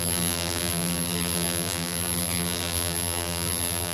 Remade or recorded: remade